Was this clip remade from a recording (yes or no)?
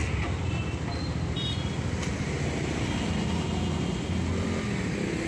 no